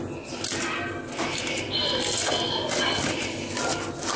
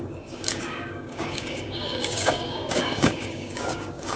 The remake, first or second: second